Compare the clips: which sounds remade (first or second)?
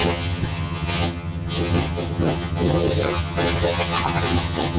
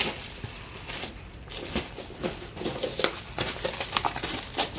first